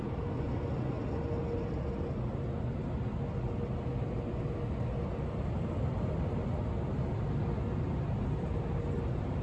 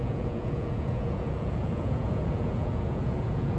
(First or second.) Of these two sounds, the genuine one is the first